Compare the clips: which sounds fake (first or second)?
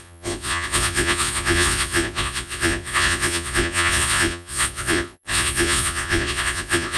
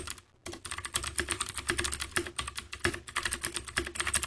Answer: first